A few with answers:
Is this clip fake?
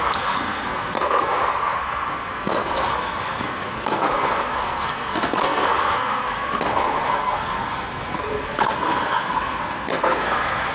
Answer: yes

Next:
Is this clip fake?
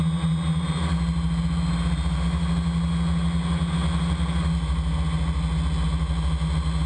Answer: no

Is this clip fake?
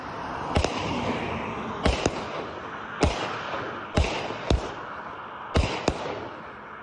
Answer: no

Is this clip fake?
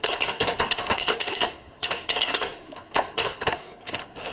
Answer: yes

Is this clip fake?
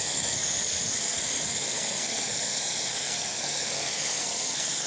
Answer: yes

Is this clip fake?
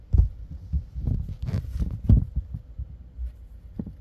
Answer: no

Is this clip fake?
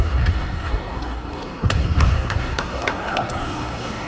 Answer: yes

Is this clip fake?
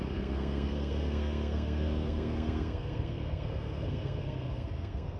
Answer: yes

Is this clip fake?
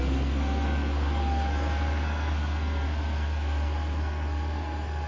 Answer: yes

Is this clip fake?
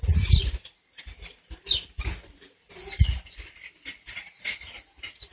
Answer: no